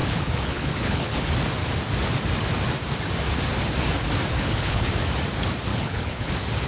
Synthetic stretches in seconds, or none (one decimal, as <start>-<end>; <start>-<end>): 0.0-1.3; 4.3-4.9; 5.7-6.3